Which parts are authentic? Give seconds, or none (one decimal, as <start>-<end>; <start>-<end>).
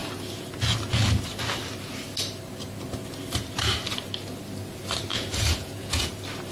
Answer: 0.0-5.1; 6.1-6.5